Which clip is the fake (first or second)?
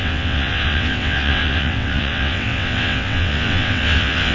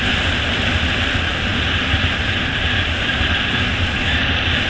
first